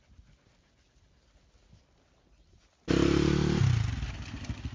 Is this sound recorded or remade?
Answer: recorded